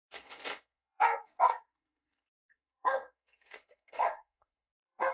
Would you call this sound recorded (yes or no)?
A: no